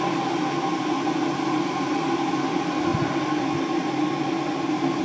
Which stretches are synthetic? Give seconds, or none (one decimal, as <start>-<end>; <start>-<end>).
none